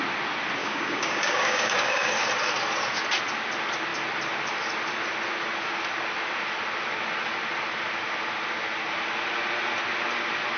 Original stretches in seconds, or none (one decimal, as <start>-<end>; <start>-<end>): 0.0-0.6; 2.1-10.6